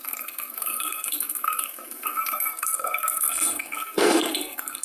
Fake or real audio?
fake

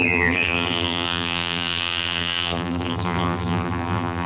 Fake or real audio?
fake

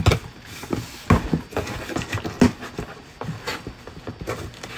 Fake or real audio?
real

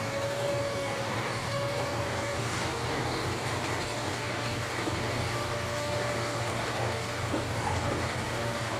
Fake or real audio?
fake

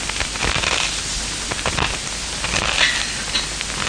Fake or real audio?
real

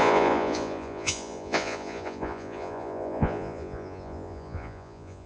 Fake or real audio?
fake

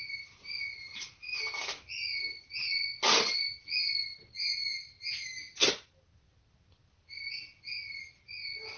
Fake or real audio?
real